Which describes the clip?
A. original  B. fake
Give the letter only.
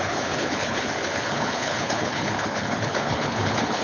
B